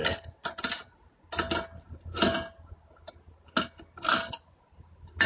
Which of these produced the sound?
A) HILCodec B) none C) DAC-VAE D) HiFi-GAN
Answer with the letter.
B